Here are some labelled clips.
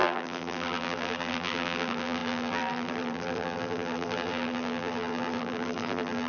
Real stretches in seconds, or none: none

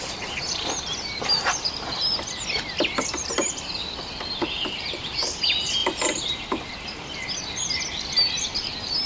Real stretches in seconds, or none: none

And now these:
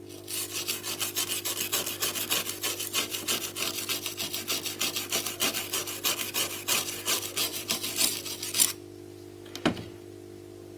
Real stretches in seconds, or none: 0.0-3.1; 3.9-7.5; 8.1-10.8